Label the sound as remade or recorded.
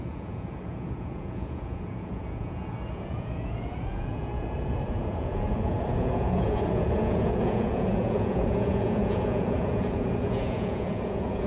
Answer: remade